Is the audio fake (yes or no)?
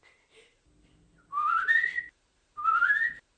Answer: no